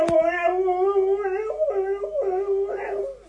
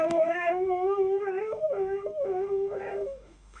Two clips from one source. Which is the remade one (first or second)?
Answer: second